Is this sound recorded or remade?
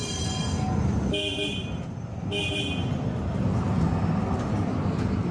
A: recorded